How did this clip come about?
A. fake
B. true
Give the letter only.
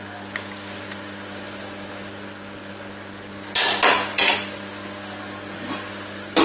B